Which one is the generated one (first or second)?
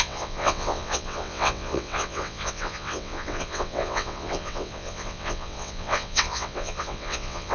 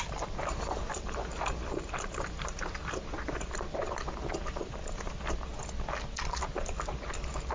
first